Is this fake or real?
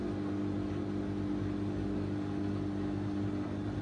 real